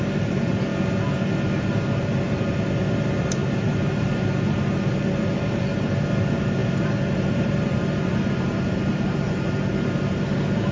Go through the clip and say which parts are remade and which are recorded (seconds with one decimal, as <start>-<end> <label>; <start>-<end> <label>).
0.0-0.7 remade; 0.7-2.0 recorded; 2.0-10.7 remade